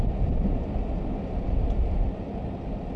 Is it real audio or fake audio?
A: real